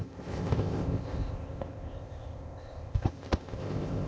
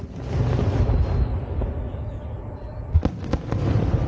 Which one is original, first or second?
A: second